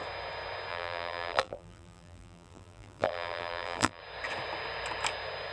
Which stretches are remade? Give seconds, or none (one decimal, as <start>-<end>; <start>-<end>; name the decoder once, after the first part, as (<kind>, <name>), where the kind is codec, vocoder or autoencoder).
0.7-4.0 (vocoder, BigVGAN v2)